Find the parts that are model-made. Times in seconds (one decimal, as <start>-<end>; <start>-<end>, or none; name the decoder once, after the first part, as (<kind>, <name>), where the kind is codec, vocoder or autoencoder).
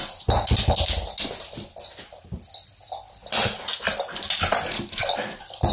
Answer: none